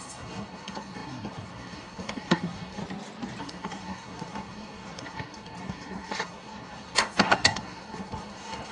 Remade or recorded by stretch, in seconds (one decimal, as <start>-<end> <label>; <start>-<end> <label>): 0.0-2.8 remade; 2.8-3.4 recorded; 3.4-8.7 remade

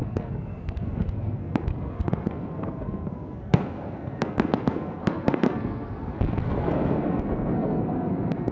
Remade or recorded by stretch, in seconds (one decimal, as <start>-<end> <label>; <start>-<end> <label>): 0.0-8.5 remade

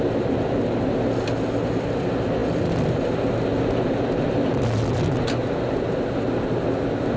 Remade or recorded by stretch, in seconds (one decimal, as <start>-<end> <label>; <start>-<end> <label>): 0.0-7.2 recorded

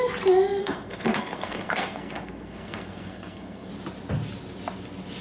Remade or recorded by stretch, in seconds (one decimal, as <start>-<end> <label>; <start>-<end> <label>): 0.0-0.6 recorded; 0.6-3.7 remade; 3.7-5.2 recorded

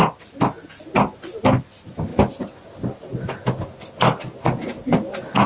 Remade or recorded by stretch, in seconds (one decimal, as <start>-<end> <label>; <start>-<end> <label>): 0.0-5.5 recorded